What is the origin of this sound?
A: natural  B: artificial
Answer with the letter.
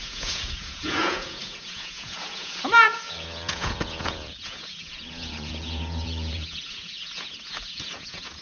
B